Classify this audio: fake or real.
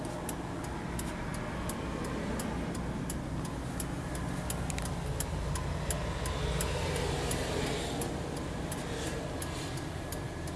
real